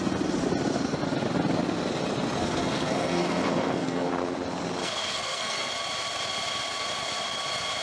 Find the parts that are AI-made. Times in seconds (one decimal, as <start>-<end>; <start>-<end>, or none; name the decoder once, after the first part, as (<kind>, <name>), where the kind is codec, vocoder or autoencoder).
2.4-4.1 (codec, SNAC); 4.8-5.7

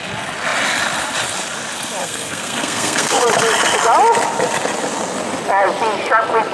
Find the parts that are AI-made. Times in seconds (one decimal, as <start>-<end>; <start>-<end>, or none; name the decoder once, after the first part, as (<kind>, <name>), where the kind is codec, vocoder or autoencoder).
2.0-3.2 (codec, SNAC)

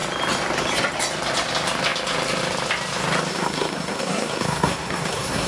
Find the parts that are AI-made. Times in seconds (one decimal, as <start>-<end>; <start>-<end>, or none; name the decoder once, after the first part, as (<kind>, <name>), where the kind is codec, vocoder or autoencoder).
3.3-5.5 (codec, SNAC)

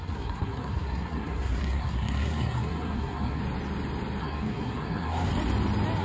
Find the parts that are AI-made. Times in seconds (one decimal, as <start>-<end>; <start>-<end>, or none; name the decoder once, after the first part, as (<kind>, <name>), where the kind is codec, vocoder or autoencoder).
0.0-3.4 (codec, SNAC); 4.2-5.3